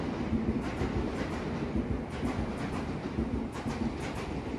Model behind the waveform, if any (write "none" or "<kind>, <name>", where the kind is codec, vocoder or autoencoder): none